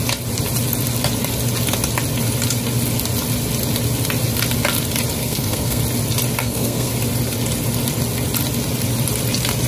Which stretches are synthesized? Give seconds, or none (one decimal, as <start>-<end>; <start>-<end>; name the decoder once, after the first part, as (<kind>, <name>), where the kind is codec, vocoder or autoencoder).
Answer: 5.2-5.8 (codec, SNAC); 6.4-6.9